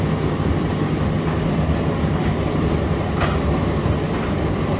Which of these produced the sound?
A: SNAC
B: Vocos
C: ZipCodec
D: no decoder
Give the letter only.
D